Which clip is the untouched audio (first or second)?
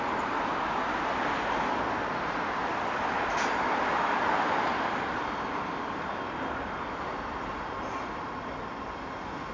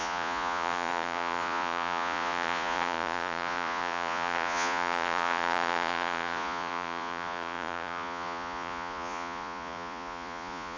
first